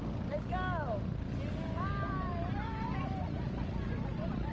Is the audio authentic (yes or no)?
yes